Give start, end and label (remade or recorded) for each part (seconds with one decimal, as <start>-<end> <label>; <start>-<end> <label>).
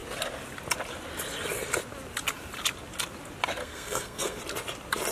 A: 0.0-3.6 recorded; 3.6-4.4 remade; 4.4-5.1 recorded